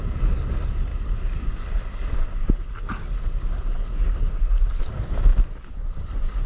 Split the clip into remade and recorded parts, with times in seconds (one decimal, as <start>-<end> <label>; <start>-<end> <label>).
0.0-6.5 recorded